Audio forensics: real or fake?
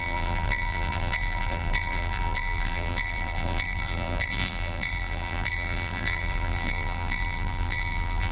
fake